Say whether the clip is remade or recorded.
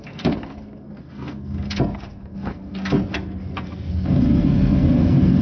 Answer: remade